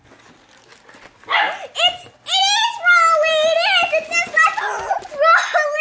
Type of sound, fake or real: real